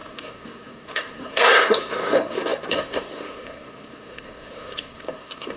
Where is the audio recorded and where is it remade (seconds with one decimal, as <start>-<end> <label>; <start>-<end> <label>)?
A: 0.0-5.6 remade